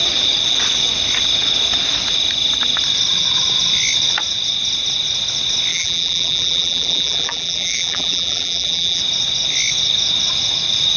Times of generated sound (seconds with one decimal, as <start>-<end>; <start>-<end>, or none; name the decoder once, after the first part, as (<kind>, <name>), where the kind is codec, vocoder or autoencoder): 5.7-9.0 (vocoder, BigVGAN v2)